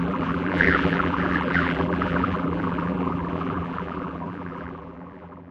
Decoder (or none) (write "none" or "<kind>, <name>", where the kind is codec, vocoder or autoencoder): vocoder, BigVGAN v2